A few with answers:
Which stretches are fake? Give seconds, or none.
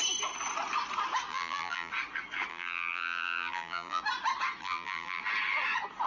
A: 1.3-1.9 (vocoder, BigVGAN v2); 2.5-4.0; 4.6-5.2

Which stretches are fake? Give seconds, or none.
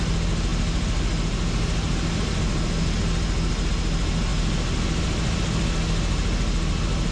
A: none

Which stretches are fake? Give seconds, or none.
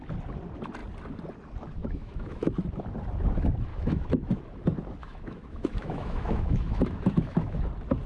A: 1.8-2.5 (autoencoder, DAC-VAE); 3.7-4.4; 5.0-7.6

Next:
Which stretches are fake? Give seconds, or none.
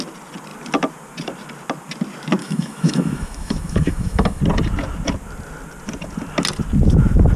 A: 2.4-4.4 (autoencoder, DAC-VAE)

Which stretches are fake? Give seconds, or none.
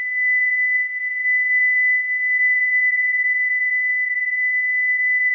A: 0.0-5.3 (codec, DAC)